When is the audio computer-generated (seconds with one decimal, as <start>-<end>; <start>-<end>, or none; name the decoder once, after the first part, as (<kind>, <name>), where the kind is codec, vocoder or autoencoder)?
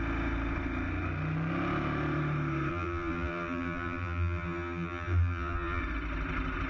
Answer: 2.7-5.8 (vocoder, BigVGAN v2)